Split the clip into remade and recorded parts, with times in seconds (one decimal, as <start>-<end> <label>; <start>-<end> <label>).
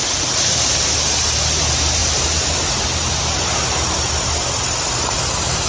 0.0-5.7 recorded